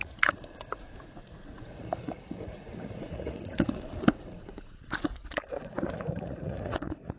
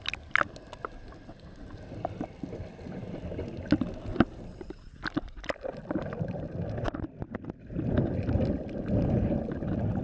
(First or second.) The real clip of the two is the second